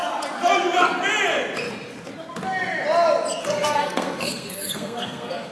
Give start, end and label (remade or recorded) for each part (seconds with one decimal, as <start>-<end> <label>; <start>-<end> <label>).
0.0-3.4 recorded; 3.4-5.5 remade